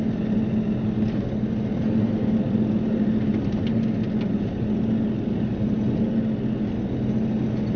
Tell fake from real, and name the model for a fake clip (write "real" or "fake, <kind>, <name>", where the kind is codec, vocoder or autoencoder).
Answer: real